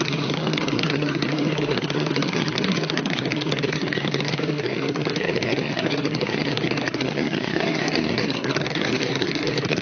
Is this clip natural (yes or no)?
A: no